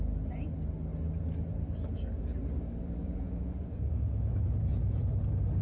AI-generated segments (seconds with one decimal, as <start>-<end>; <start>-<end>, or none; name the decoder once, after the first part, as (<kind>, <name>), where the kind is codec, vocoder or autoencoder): 3.0-5.0 (vocoder, Vocos)